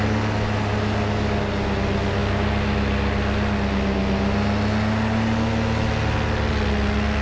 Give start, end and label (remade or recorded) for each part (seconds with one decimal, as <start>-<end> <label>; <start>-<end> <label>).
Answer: 0.0-7.2 recorded